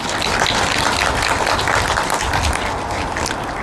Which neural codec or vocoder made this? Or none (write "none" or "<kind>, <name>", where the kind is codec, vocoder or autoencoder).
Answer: none